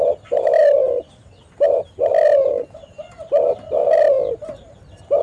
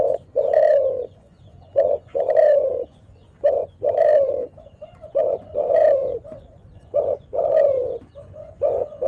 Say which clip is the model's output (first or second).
second